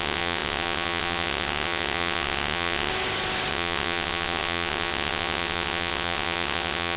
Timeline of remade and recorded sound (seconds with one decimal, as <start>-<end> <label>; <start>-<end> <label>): 0.0-2.9 remade; 2.9-3.5 recorded; 3.5-7.0 remade